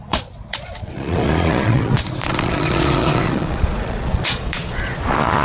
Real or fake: fake